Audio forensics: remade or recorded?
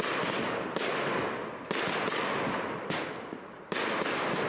recorded